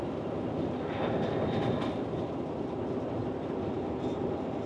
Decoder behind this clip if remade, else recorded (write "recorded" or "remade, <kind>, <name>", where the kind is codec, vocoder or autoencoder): recorded